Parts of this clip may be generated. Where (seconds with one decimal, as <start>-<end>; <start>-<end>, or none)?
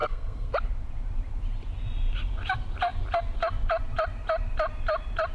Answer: 0.0-0.5